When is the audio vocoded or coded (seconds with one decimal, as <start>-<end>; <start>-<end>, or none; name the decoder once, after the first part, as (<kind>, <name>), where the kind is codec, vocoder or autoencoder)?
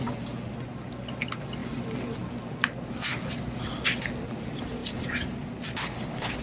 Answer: none